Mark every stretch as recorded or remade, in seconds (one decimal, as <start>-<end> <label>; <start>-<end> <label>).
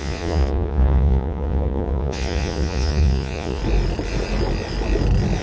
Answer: 0.0-3.6 remade; 3.6-5.4 recorded